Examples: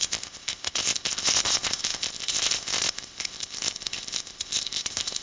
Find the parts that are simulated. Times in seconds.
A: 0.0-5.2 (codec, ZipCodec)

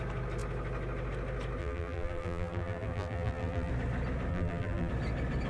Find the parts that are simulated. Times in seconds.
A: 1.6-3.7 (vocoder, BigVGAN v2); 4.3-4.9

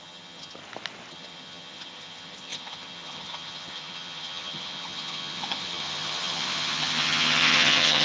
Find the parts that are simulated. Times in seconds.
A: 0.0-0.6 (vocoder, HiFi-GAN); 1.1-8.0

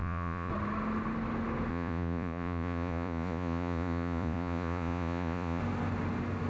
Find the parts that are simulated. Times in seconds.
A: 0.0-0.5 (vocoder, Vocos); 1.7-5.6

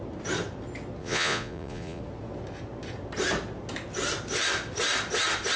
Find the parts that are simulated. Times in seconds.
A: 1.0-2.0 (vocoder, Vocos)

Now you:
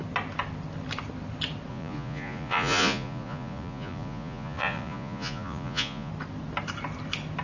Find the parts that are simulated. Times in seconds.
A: 1.7-6.1 (vocoder, Vocos)

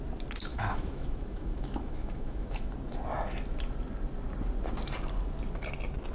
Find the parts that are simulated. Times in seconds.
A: 0.5-2.7 (autoencoder, DAC-VAE)